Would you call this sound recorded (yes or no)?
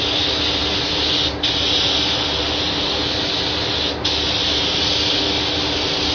yes